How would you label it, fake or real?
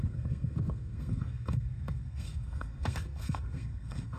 fake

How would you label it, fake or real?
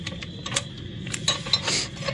real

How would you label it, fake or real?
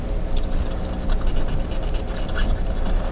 real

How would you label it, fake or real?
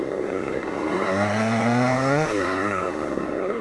fake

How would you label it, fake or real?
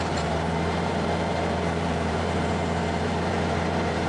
fake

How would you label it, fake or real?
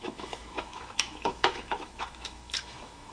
fake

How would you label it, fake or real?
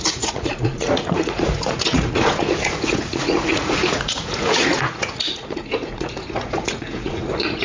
fake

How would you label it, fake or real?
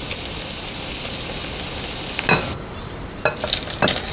real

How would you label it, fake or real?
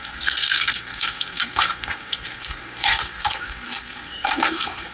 fake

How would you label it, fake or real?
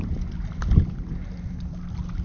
real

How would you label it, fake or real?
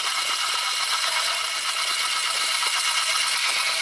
real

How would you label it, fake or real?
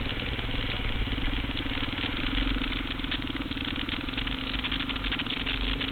real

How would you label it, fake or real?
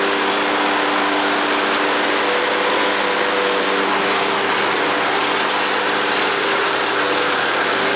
real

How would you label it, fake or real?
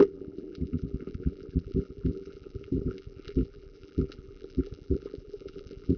fake